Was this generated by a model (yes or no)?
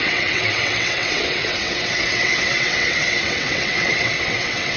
yes